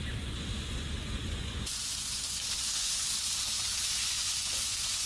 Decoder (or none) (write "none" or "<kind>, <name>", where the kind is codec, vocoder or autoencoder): vocoder, Vocos